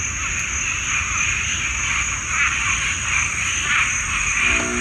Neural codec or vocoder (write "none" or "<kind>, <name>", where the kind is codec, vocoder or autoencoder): none